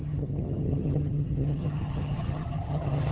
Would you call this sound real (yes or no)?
no